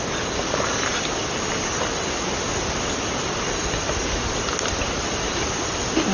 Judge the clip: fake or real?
real